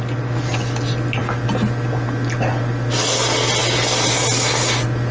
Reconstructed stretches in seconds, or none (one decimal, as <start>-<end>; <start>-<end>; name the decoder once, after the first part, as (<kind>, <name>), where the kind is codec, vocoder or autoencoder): none